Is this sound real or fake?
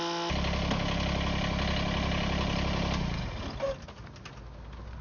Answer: real